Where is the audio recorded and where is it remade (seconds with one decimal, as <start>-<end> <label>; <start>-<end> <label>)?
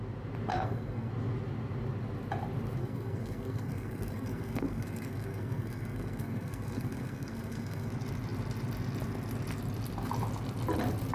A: 0.0-0.5 recorded; 0.5-1.1 remade; 1.1-2.8 recorded; 2.8-7.9 remade; 7.9-11.1 recorded